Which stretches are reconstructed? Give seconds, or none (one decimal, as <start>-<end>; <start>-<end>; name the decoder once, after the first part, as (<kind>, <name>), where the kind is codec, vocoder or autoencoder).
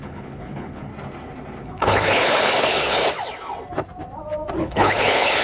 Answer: 0.0-0.9 (codec, HILCodec); 1.6-3.0; 4.6-5.4